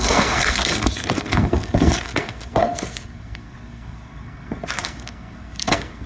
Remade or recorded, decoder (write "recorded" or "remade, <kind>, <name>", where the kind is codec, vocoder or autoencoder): remade, codec, SNAC